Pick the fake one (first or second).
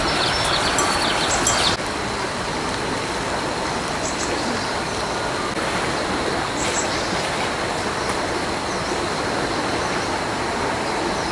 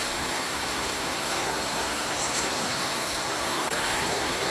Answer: second